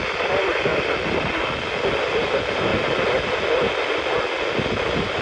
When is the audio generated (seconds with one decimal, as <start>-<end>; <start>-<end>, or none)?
0.7-1.3